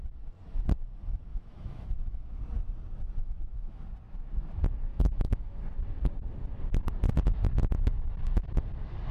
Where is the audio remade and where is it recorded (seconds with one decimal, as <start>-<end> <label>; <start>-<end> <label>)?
0.0-1.3 recorded; 1.3-2.4 remade; 2.4-3.2 recorded; 3.2-3.8 remade; 3.8-4.9 recorded; 4.9-5.6 remade; 5.6-9.1 recorded